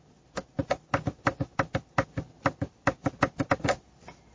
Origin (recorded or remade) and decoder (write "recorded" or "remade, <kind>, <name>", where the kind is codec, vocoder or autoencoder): recorded